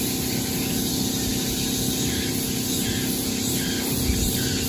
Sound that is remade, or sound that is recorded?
recorded